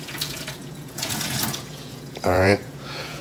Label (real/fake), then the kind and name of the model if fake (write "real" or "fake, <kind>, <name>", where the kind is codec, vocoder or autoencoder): fake, vocoder, Vocos